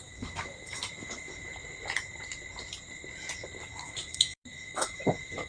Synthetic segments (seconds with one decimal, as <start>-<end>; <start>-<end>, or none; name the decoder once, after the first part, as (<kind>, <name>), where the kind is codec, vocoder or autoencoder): 0.0-1.5 (autoencoder, DAC-VAE); 3.6-5.5